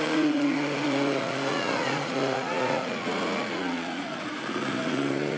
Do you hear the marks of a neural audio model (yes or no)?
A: yes